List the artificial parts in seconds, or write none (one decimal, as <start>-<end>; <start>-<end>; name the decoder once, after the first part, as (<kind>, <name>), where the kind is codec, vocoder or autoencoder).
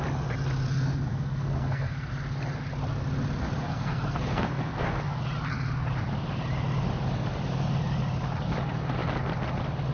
1.1-2.1 (codec, SNAC); 3.6-5.2